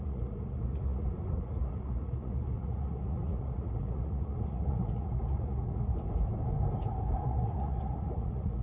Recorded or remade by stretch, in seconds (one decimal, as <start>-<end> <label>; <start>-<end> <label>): 0.0-5.9 remade; 5.9-7.2 recorded; 7.2-8.6 remade